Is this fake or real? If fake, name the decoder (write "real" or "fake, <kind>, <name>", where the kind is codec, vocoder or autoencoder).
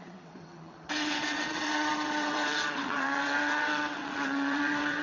fake, vocoder, WaveNeXt